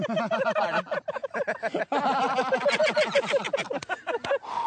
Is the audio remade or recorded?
recorded